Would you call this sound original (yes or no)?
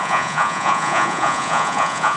no